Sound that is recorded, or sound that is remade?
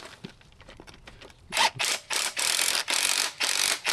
remade